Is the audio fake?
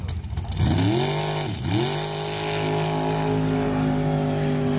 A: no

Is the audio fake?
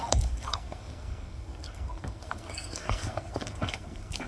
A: yes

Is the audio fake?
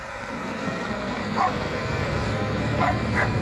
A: yes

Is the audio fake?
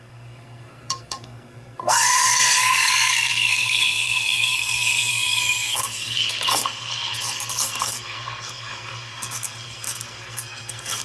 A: yes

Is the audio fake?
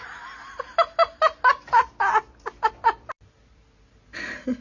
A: no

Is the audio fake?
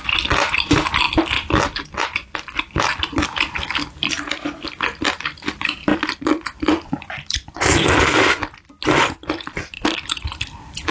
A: no